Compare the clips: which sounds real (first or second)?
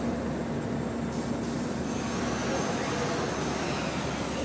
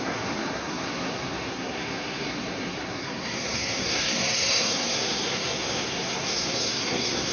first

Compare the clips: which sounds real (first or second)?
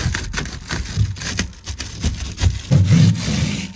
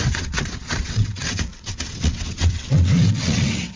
first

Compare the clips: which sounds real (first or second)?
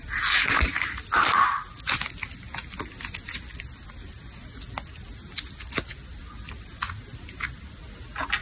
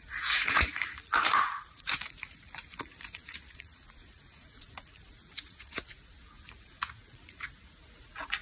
first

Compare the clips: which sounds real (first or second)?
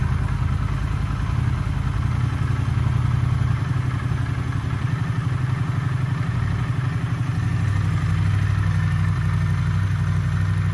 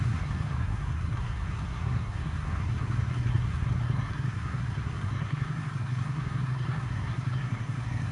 first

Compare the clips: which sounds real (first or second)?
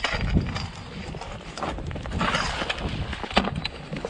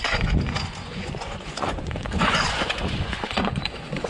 first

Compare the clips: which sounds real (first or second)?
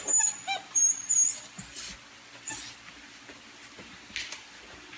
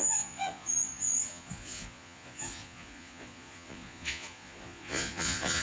first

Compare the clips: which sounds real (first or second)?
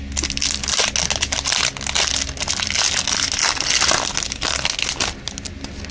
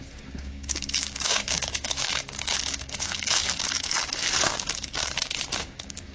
first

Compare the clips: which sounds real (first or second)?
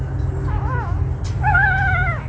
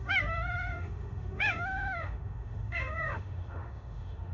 first